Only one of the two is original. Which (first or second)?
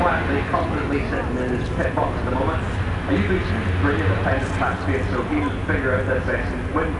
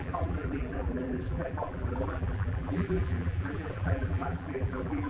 first